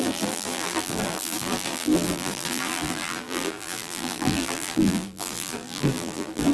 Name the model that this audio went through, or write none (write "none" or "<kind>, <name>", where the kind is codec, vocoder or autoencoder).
vocoder, BigVGAN v2